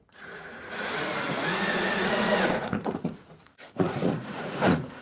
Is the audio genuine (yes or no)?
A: no